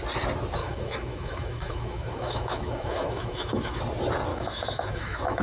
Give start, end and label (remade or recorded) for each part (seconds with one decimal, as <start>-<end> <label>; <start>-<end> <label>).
0.0-0.6 recorded; 0.6-3.8 remade; 3.8-4.3 recorded; 4.3-5.4 remade